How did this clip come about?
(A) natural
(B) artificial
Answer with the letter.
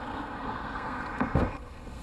B